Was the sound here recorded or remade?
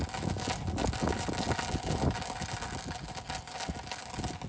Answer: recorded